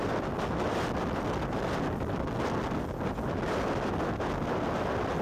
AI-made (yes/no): no